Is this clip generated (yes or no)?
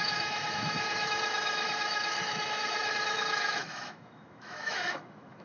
yes